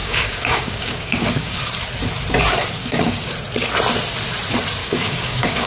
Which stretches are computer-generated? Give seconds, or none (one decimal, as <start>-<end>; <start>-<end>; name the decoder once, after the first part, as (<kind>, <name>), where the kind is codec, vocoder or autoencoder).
0.0-1.6 (codec, DAC); 2.8-3.3; 4.8-5.7